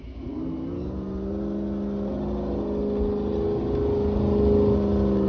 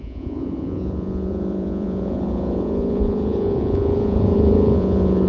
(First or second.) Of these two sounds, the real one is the first